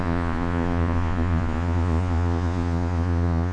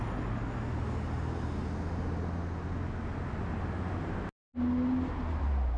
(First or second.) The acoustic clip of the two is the second